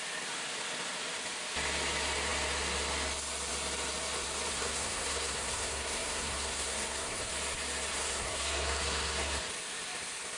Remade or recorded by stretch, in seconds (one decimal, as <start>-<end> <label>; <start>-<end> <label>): 0.0-4.5 recorded; 4.5-7.3 remade; 7.3-7.9 recorded; 7.9-9.4 remade; 9.4-10.4 recorded

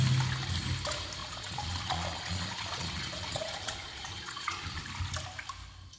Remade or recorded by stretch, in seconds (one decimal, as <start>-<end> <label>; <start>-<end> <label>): 0.0-1.2 recorded; 1.2-4.8 remade; 4.8-6.0 recorded

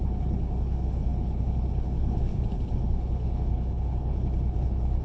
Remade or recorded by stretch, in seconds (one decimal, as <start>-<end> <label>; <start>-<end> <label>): 0.0-5.0 remade